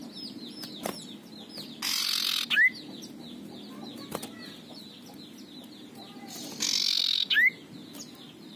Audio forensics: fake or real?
real